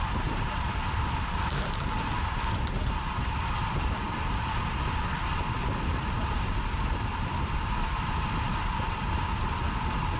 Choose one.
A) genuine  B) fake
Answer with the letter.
B